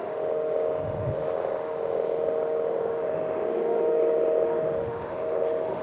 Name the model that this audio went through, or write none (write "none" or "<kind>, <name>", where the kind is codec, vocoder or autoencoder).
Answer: autoencoder, DAC-VAE